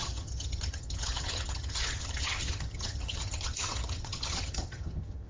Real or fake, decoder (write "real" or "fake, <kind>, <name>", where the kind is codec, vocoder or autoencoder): fake, vocoder, HiFi-GAN